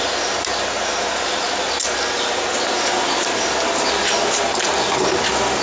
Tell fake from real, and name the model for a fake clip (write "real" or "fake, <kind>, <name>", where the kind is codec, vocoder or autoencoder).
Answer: real